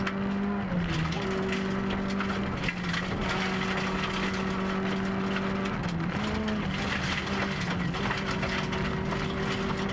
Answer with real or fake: real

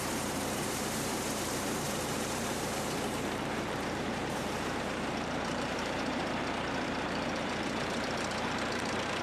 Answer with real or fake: fake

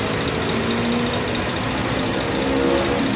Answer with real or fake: real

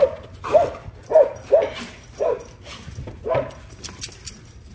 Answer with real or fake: real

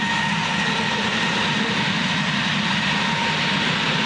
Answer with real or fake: real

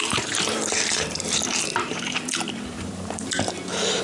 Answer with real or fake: fake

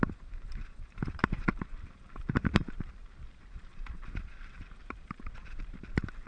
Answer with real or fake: fake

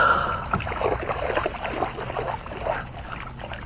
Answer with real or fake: real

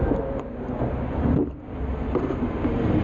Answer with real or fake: real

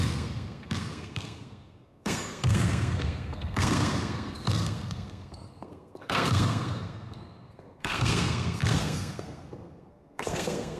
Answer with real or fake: fake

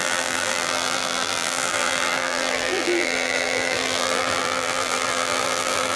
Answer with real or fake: fake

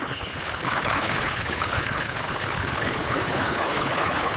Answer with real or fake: fake